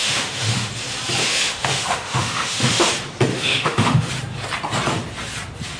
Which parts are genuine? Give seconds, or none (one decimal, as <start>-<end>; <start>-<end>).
0.7-1.2; 2.9-3.3; 4.1-5.8